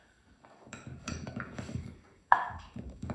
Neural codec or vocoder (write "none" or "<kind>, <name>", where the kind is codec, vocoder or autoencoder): codec, DAC